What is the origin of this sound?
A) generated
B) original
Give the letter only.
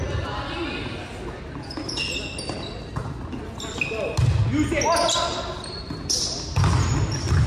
B